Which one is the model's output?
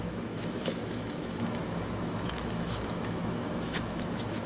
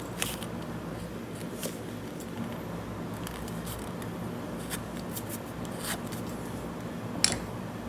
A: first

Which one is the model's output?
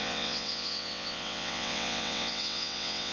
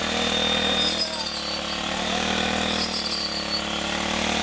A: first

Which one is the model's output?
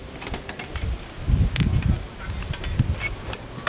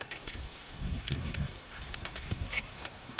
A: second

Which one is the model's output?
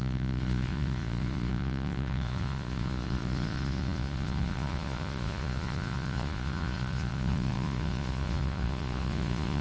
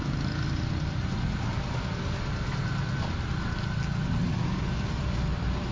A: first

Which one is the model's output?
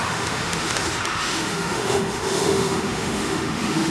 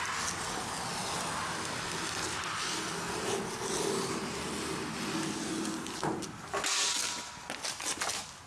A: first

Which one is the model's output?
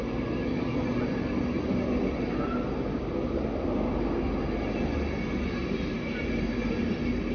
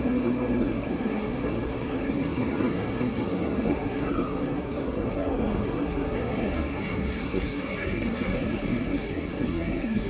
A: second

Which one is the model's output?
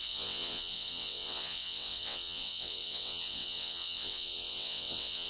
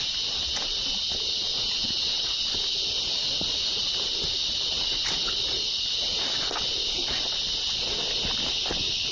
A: first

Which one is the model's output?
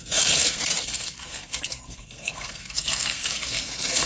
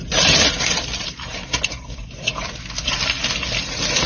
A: first